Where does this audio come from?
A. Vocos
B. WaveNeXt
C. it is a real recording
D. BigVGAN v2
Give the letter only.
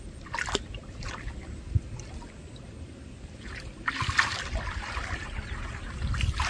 C